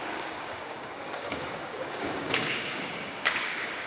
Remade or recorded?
remade